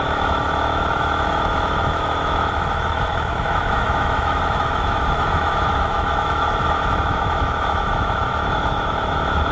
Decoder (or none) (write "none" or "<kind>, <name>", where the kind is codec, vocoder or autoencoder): autoencoder, DAC-VAE